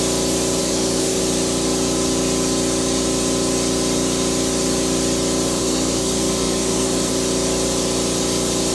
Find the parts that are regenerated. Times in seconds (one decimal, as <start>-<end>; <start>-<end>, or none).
0.6-1.2; 5.6-7.1